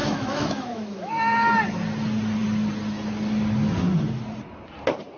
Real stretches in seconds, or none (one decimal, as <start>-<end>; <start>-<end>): 1.1-5.2